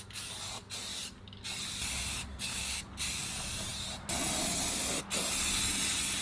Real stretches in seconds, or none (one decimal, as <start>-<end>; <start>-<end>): 0.0-2.3; 2.8-6.2